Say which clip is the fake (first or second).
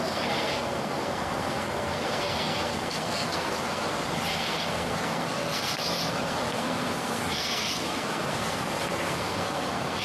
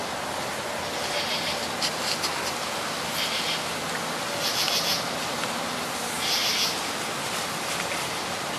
first